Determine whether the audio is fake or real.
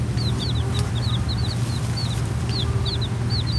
real